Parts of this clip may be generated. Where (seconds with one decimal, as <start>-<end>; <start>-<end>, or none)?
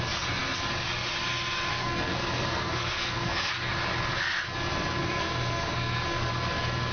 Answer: 1.7-3.5; 5.0-6.3